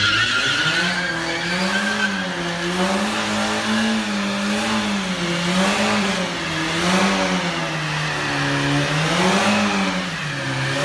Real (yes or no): yes